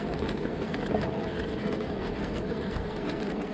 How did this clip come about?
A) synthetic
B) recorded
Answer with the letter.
A